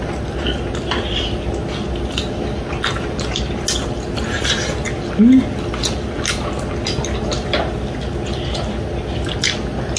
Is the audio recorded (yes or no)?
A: yes